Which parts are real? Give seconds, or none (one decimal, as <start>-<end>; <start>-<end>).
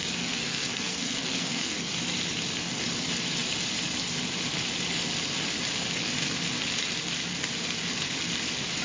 1.9-8.8